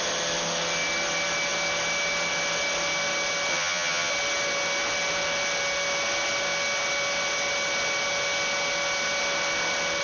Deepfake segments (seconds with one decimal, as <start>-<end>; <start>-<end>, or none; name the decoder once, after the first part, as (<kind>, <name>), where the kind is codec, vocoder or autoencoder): 3.5-4.1 (vocoder, HiFi-GAN)